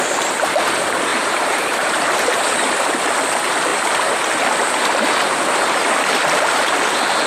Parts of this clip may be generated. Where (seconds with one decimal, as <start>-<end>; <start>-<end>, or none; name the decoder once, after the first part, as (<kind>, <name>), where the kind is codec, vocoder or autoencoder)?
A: 1.1-2.8 (vocoder, BigVGAN v2)